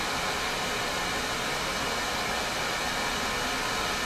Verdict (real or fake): real